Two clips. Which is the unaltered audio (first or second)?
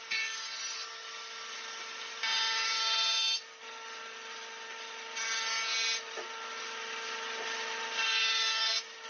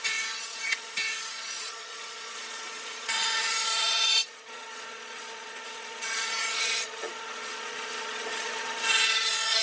first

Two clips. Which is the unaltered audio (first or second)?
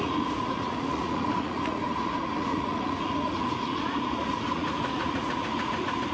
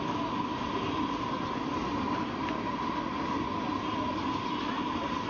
second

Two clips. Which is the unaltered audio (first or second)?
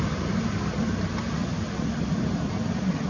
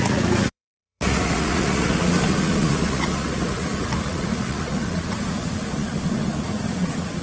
first